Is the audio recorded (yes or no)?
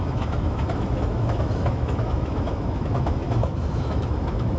no